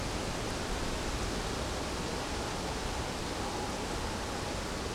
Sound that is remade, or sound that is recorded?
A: recorded